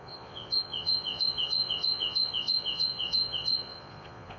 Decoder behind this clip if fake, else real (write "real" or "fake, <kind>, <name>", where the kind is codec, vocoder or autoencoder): fake, vocoder, Vocos